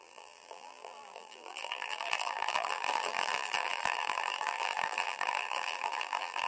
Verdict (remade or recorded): remade